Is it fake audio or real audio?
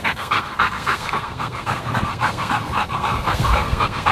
fake